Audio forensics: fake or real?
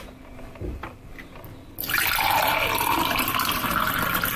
fake